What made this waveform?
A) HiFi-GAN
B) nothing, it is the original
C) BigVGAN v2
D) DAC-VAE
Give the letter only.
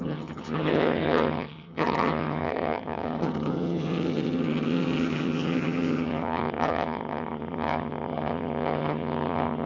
A